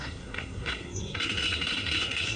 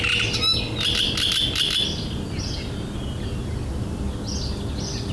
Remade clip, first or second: first